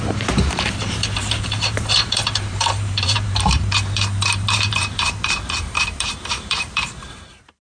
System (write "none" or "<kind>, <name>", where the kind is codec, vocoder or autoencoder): vocoder, BigVGAN v2